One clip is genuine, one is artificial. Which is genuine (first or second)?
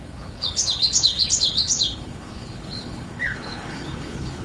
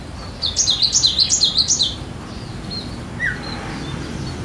second